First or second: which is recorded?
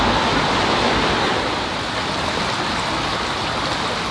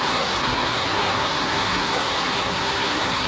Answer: first